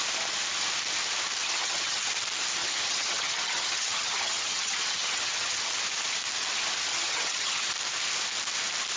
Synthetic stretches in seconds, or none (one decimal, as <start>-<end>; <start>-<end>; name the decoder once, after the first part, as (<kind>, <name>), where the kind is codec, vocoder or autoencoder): 1.4-2.1 (vocoder, HiFi-GAN); 2.6-5.7; 6.9-7.7

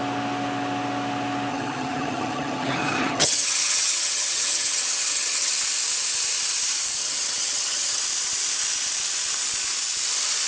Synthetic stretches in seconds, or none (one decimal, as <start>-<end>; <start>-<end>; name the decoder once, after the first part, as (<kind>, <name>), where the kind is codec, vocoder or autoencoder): 1.5-5.5 (vocoder, HiFi-GAN); 7.0-8.0